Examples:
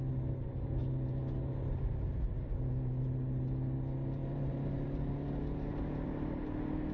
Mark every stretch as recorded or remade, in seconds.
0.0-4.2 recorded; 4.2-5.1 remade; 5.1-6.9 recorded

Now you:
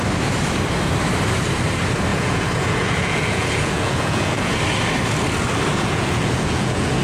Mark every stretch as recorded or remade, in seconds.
0.0-2.1 recorded; 2.1-4.5 remade; 4.5-5.7 recorded; 5.7-7.0 remade